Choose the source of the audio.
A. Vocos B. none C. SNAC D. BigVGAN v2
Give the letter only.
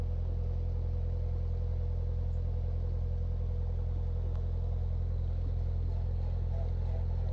B